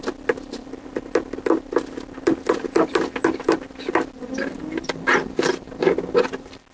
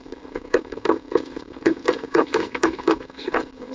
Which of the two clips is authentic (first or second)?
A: first